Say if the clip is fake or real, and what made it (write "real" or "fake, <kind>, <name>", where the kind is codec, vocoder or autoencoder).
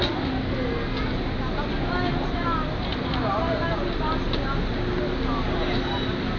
real